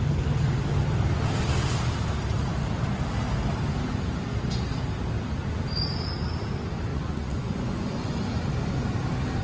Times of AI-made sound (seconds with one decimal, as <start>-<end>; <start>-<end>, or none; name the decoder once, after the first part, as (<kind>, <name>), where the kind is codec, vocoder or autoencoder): 6.9-8.6 (vocoder, Vocos)